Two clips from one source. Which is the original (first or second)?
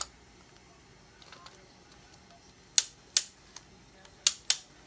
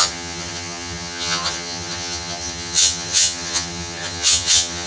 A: first